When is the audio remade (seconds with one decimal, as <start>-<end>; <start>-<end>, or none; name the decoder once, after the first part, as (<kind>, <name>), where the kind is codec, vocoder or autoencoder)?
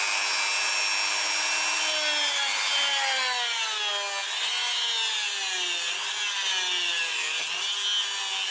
none